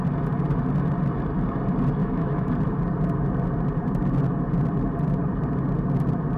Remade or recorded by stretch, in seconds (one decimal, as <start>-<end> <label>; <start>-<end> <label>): 0.0-2.0 recorded; 2.0-2.5 remade; 2.5-6.4 recorded